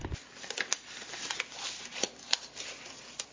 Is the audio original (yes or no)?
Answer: yes